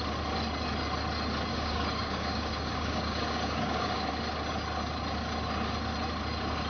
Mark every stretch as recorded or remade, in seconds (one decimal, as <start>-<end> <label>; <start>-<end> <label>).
0.0-1.5 recorded; 1.5-4.1 remade; 4.1-6.7 recorded